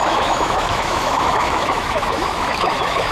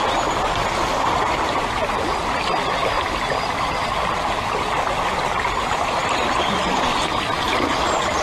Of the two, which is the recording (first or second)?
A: second